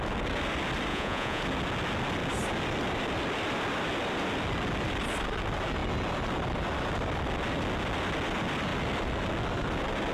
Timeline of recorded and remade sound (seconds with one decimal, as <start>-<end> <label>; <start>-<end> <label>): 0.0-0.9 recorded; 0.9-1.4 remade; 1.4-10.1 recorded